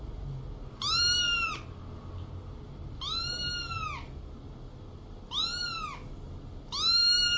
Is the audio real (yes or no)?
yes